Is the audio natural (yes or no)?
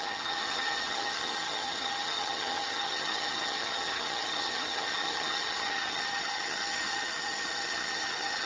no